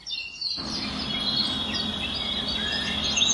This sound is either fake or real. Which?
real